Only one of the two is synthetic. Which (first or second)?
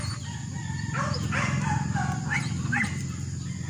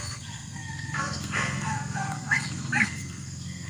second